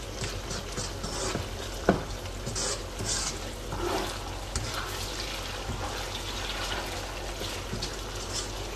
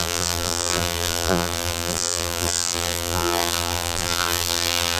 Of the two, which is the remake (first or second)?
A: second